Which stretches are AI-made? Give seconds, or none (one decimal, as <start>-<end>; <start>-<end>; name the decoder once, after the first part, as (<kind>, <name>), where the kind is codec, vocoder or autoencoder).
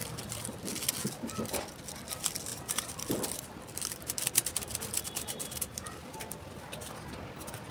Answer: 0.0-0.5 (vocoder, BigVGAN v2); 2.5-6.9